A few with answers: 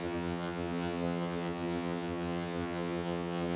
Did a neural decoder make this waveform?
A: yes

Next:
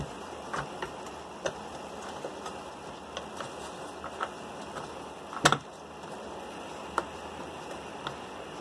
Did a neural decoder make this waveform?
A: no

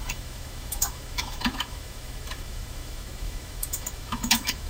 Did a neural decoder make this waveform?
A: yes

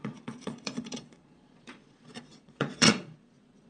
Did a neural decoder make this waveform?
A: yes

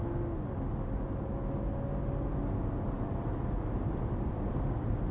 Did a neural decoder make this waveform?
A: no